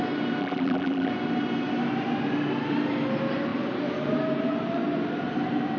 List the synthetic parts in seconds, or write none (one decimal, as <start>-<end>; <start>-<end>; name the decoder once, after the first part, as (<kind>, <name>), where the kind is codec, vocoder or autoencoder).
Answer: 0.4-1.1 (vocoder, BigVGAN v2)